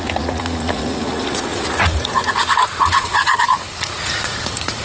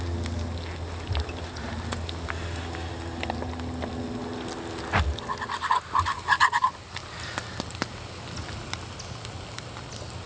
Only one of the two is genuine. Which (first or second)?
second